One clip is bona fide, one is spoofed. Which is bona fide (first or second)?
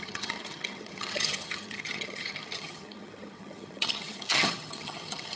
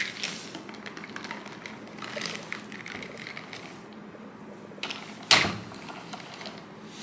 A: second